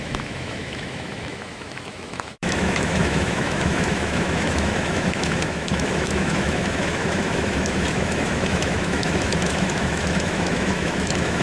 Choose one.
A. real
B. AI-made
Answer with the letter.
B